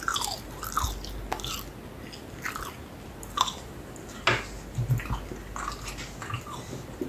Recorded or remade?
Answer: recorded